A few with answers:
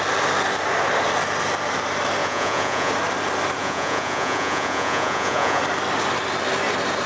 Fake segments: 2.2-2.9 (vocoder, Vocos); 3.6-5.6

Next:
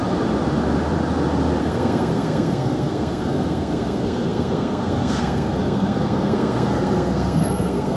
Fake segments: 1.6-8.0 (codec, SNAC)

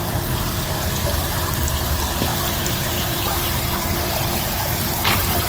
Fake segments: 2.3-5.5 (vocoder, BigVGAN v2)

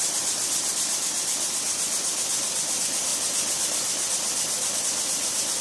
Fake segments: none

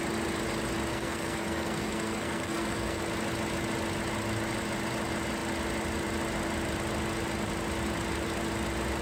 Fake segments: 0.9-3.0 (codec, SNAC)

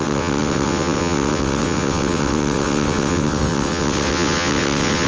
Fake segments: 0.0-5.1 (vocoder, WaveNeXt)